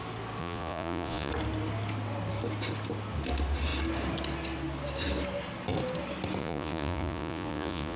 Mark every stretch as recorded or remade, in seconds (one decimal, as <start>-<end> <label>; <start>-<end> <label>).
0.0-0.4 recorded; 0.4-1.3 remade; 1.3-6.4 recorded; 6.4-8.0 remade